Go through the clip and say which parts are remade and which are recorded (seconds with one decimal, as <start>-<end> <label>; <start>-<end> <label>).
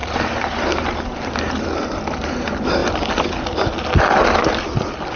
0.0-2.0 remade; 2.0-5.2 recorded